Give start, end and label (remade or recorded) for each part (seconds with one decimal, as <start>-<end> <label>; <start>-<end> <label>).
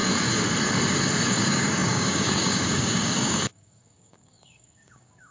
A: 0.0-1.3 recorded; 1.3-5.3 remade